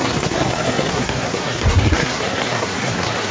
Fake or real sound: fake